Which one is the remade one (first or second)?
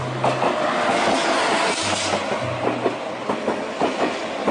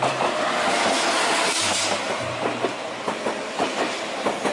second